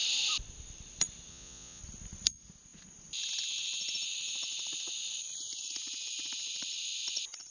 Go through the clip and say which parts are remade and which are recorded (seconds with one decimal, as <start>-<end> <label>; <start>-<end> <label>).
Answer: 0.0-1.3 recorded; 1.3-1.8 remade; 1.8-7.5 recorded